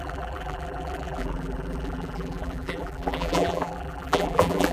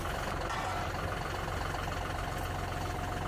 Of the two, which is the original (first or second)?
second